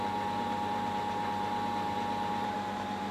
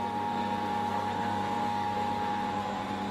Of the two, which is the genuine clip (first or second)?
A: first